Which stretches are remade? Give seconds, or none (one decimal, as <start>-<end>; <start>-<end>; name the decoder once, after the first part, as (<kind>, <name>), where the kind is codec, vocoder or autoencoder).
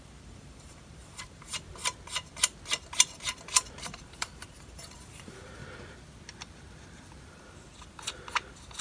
0.0-1.8 (vocoder, BigVGAN v2); 4.0-5.6